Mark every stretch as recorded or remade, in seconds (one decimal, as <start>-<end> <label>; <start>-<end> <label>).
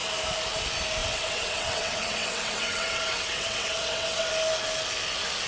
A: 0.0-1.0 recorded; 1.0-4.3 remade; 4.3-5.5 recorded